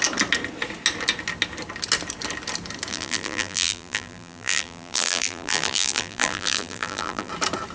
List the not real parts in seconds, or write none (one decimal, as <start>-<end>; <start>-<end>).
2.9-7.3